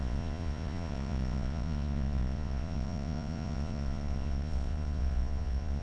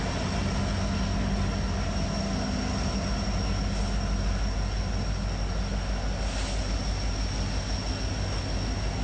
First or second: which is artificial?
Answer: first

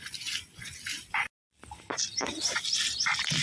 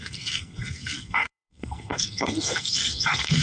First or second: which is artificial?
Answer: second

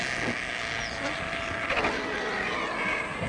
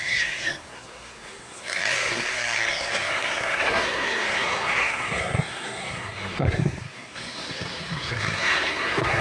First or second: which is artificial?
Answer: second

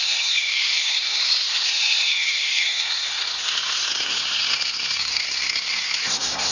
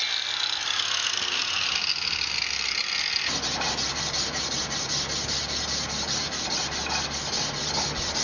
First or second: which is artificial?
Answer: first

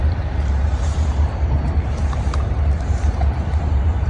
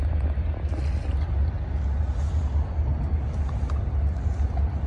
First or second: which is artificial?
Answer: first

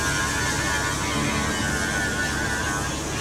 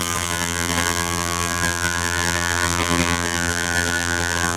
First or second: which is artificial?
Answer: second